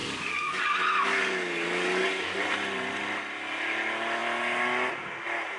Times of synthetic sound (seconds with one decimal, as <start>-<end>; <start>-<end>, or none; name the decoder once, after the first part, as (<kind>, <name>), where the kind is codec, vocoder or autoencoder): 0.0-0.6 (codec, DAC); 1.1-2.4